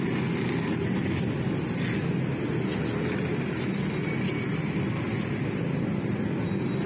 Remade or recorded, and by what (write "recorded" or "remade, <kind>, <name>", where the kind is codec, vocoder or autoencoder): recorded